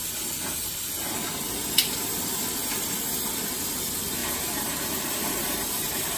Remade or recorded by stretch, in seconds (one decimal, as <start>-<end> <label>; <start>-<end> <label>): 0.0-4.2 recorded; 4.2-6.2 remade